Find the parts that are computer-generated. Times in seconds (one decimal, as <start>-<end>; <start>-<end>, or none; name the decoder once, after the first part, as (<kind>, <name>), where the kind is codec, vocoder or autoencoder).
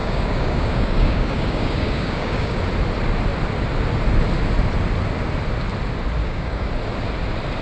0.0-2.6 (codec, DAC); 6.2-6.7